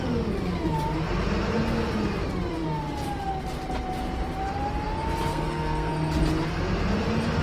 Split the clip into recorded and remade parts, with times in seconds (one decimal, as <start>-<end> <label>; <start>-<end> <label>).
0.0-5.3 recorded; 5.3-5.9 remade; 5.9-7.4 recorded